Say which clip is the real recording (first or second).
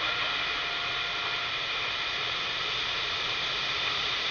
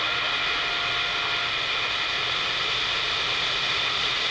second